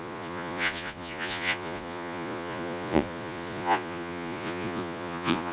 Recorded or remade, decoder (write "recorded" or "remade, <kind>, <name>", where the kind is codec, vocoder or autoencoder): remade, vocoder, Vocos